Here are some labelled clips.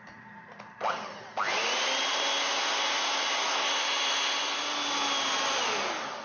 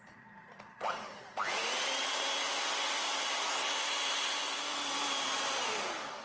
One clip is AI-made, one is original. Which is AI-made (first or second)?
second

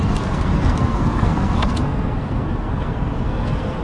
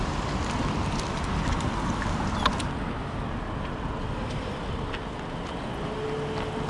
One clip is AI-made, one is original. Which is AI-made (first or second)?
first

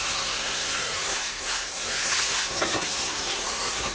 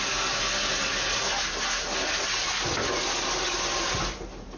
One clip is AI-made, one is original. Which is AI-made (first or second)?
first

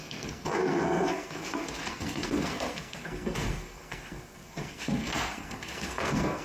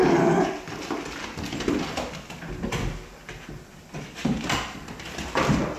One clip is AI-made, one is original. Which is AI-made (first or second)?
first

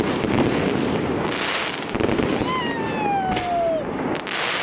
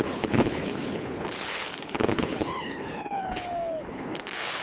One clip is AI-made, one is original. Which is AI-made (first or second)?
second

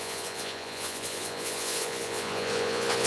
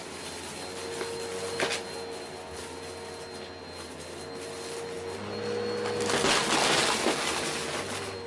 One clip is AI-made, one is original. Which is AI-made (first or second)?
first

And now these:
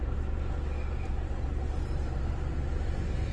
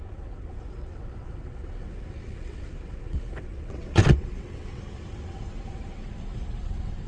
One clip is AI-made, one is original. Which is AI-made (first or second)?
second